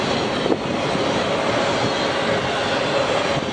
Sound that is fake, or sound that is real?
real